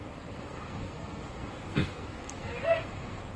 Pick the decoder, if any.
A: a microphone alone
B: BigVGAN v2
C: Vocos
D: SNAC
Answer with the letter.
D